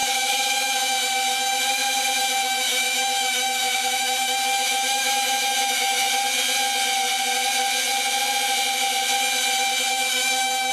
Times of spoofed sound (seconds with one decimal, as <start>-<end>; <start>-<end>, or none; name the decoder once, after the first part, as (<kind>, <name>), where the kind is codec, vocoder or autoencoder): 0.0-1.6 (autoencoder, DAC-VAE); 2.2-6.1; 9.9-10.7